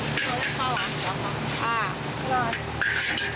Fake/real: real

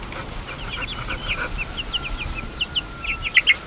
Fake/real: real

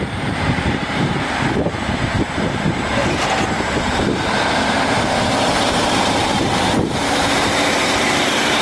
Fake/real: fake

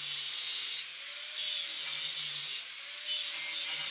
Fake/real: real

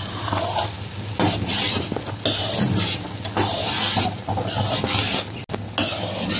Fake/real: real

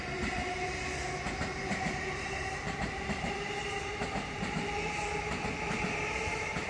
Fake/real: fake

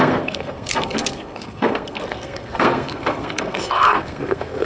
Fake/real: fake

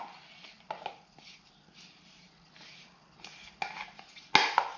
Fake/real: real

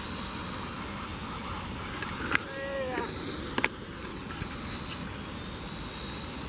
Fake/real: real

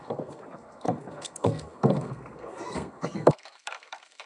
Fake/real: fake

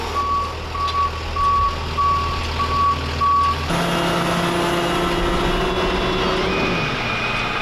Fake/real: real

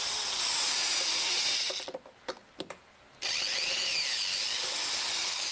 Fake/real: real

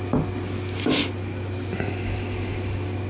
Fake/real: real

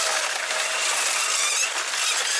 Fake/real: real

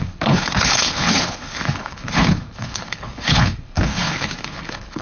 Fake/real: fake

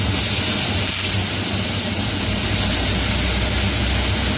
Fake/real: real